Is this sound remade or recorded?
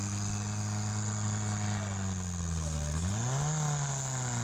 recorded